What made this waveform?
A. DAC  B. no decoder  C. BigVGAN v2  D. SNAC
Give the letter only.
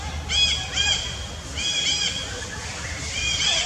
B